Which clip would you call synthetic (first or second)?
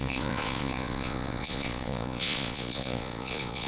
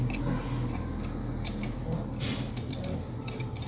first